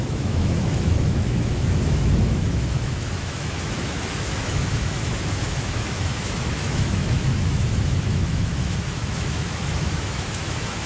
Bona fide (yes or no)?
no